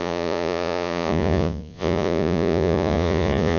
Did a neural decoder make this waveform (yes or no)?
yes